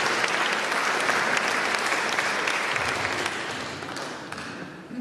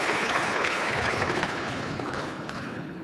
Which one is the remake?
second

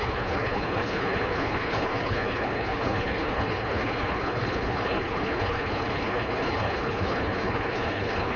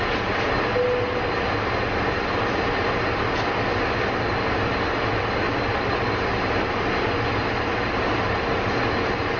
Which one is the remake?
first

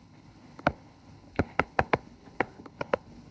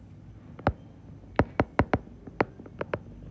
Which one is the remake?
first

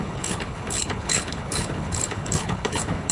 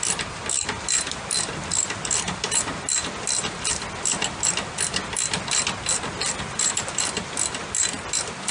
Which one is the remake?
first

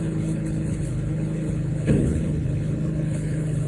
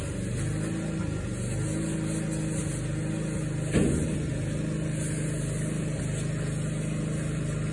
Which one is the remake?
first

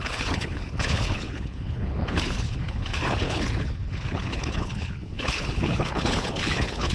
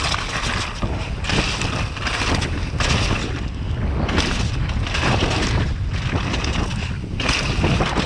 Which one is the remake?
first